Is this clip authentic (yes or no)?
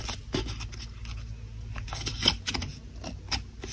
yes